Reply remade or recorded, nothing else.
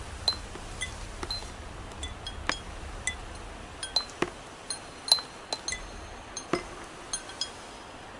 recorded